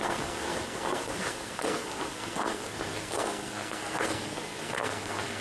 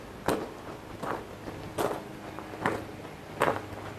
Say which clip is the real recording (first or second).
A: second